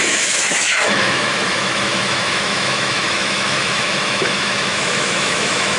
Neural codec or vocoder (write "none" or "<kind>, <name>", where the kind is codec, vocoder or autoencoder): autoencoder, DAC-VAE